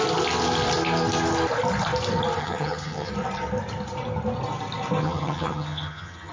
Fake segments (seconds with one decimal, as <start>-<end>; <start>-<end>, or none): 2.4-3.1; 5.0-6.3